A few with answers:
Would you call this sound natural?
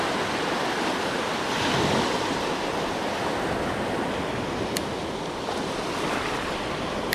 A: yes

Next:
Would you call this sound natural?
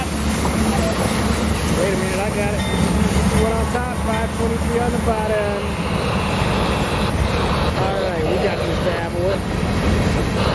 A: yes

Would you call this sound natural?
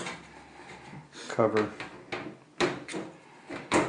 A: yes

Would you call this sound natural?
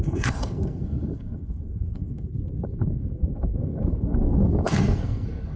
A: no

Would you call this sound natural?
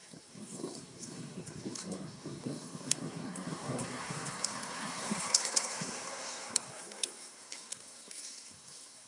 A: no